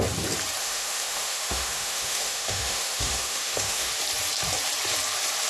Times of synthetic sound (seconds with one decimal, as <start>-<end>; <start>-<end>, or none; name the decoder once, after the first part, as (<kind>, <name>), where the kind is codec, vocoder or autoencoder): 0.6-3.9 (autoencoder, DAC-VAE)